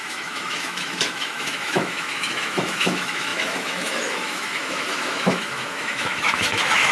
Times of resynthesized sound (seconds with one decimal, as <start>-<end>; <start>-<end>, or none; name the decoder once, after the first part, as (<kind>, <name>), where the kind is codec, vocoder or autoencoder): 0.0-6.9 (autoencoder, DAC-VAE)